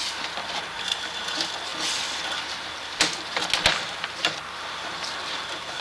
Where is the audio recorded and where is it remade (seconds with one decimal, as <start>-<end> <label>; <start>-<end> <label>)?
0.0-5.8 recorded